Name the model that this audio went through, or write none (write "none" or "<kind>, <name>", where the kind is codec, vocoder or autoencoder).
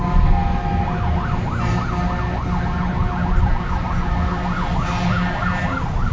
none